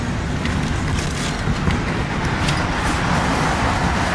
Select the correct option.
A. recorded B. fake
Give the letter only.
A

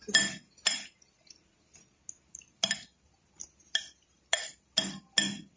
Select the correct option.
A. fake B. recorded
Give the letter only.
B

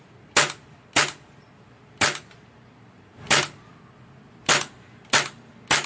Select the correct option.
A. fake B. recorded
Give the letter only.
B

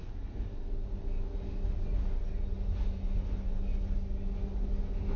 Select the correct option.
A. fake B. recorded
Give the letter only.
B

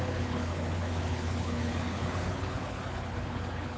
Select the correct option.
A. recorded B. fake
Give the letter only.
B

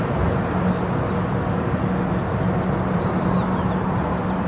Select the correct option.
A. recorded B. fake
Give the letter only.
A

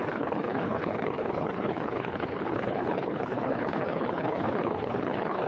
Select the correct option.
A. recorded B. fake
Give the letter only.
B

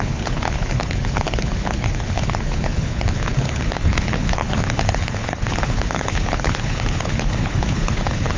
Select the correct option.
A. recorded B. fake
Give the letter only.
B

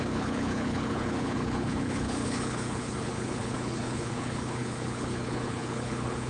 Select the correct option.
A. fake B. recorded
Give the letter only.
A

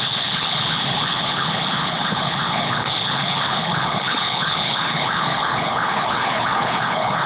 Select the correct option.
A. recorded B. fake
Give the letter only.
B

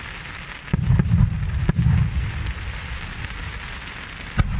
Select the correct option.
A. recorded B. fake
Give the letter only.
A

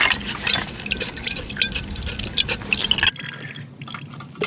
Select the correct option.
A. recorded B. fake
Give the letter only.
A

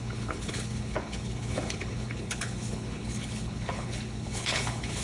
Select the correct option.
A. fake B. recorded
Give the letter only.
A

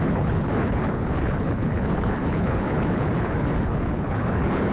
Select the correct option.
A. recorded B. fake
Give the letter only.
B